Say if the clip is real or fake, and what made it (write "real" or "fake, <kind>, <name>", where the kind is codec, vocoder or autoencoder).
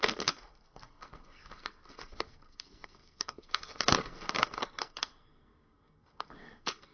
fake, codec, SNAC